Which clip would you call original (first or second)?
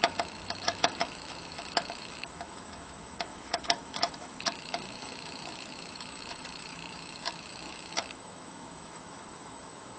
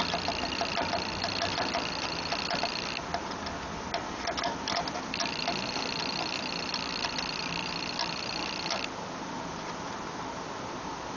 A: second